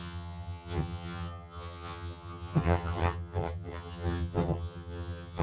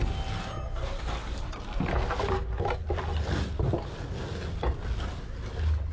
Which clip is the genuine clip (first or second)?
second